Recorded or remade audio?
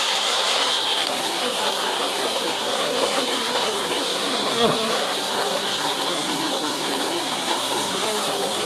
remade